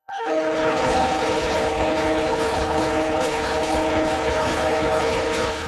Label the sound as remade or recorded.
remade